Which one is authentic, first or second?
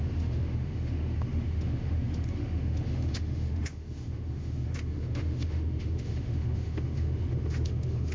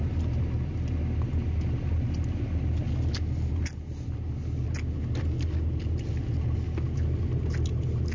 second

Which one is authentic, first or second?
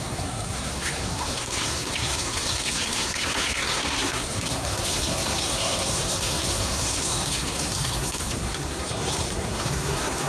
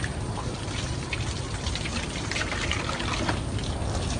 second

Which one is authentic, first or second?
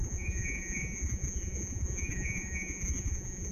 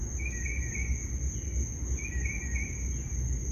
second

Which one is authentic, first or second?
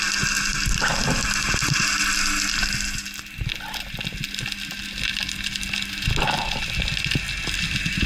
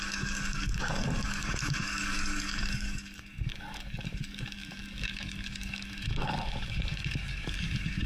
first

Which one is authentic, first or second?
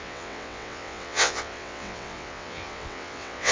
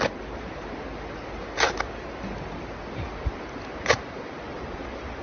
second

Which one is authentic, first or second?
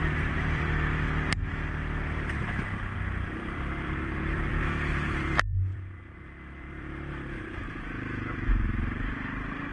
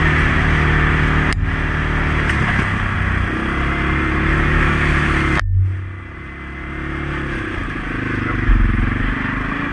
second